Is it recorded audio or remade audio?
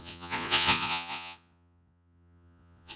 remade